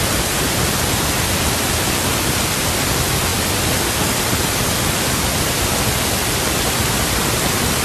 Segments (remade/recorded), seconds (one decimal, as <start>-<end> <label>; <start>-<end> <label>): 0.0-7.8 recorded